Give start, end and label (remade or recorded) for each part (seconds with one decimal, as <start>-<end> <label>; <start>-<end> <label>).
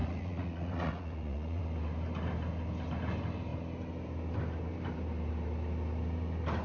0.0-1.6 remade; 1.6-6.6 recorded